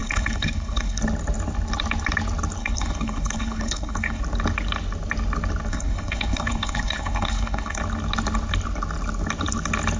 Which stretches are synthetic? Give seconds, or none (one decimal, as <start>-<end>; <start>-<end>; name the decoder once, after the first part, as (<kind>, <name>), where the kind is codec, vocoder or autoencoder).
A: 0.0-1.0 (codec, HILCodec); 2.6-4.2; 5.7-7.8